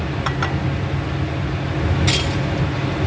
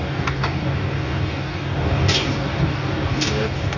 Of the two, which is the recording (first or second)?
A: first